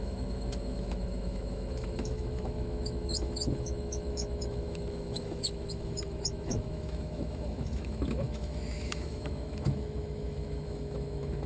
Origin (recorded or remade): remade